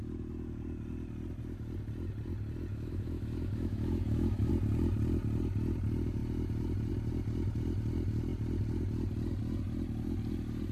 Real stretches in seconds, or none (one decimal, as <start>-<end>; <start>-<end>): 0.0-2.7; 4.5-10.7